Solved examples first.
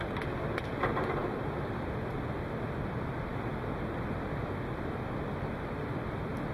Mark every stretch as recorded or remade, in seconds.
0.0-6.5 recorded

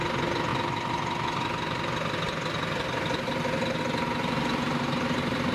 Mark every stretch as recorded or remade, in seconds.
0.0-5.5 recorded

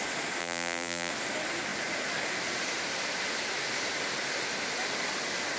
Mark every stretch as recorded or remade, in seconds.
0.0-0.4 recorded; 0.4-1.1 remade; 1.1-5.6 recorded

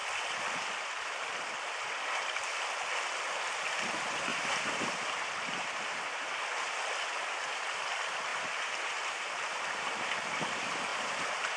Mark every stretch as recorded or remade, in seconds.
0.0-4.3 recorded; 4.3-6.2 remade; 6.2-8.3 recorded; 8.3-9.2 remade; 9.2-10.9 recorded; 10.9-11.6 remade

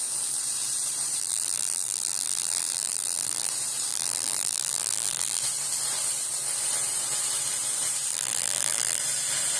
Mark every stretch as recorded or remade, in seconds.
0.0-1.2 recorded; 1.2-3.5 remade; 3.5-3.9 recorded; 3.9-5.4 remade; 5.4-8.1 recorded; 8.1-9.0 remade; 9.0-9.6 recorded